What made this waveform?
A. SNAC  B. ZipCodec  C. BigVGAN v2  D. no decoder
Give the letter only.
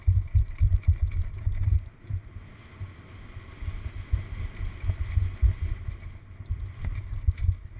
D